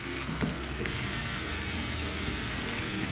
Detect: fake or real fake